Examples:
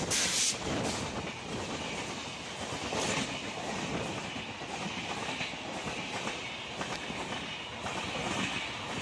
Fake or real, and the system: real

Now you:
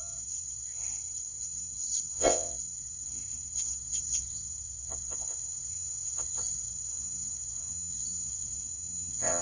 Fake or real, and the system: fake, vocoder, WaveNeXt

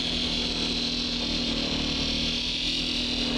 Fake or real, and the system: real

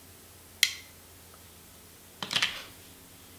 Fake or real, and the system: real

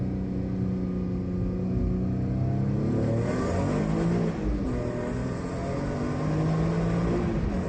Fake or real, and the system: real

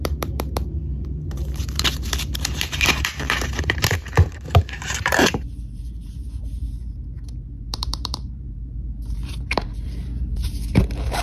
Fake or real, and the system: fake, vocoder, BigVGAN v2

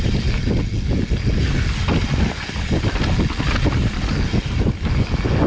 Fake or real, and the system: real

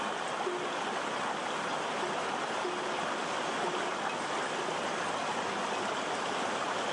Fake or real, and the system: real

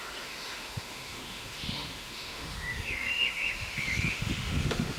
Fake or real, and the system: fake, autoencoder, DAC-VAE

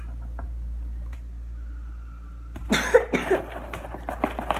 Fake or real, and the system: real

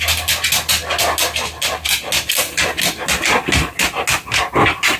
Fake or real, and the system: real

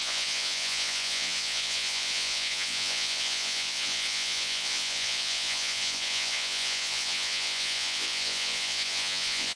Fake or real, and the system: fake, vocoder, Vocos